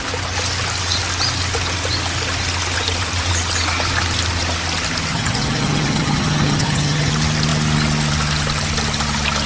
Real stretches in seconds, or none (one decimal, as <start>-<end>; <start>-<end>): 0.0-5.1; 7.1-9.5